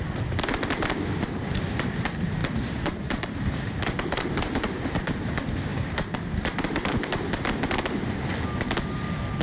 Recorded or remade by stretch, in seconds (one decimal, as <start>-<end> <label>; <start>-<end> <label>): 0.0-2.4 recorded; 2.4-5.3 remade; 5.3-5.7 recorded; 5.7-7.3 remade; 7.3-9.4 recorded